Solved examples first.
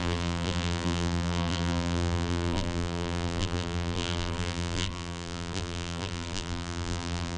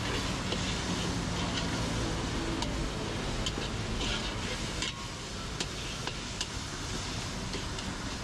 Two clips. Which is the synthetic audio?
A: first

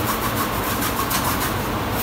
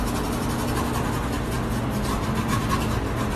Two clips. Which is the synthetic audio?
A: first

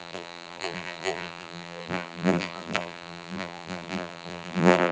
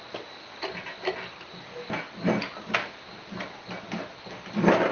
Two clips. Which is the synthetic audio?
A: first